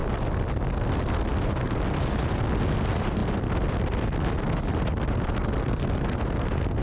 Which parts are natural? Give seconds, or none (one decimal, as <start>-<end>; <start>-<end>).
0.0-6.8

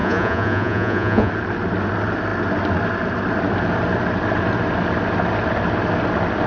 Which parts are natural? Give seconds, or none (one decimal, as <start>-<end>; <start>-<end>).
1.3-6.5

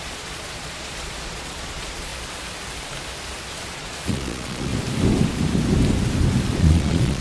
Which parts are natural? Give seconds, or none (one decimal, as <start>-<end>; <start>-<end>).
2.1-3.5; 4.7-6.6

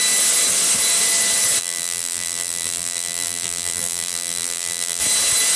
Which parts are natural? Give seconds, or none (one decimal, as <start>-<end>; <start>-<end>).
0.0-1.6; 5.0-5.6

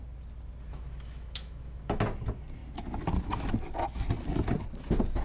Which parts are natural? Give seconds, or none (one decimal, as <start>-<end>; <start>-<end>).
0.0-0.7; 2.0-5.2